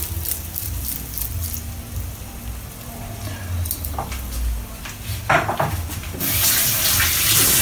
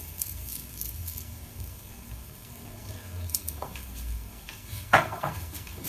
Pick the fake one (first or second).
second